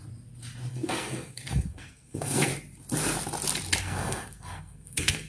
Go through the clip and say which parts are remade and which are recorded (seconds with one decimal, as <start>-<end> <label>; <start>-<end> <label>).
0.0-0.7 recorded; 0.7-2.5 remade; 2.5-3.8 recorded; 3.8-5.3 remade